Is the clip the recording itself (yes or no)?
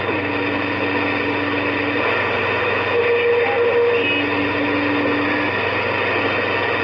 yes